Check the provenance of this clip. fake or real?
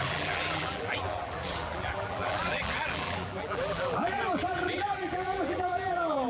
fake